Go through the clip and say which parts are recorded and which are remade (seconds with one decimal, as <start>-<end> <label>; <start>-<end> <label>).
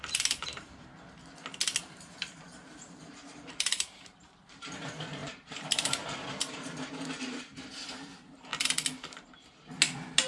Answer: 0.0-0.9 remade; 0.9-1.8 recorded; 1.8-8.5 remade; 8.5-10.3 recorded